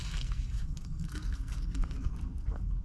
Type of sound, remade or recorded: remade